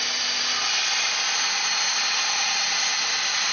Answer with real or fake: real